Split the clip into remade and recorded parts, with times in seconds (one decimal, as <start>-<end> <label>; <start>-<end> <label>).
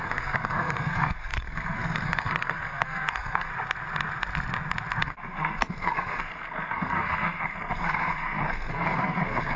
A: 0.0-3.5 remade; 3.5-5.0 recorded; 5.0-9.6 remade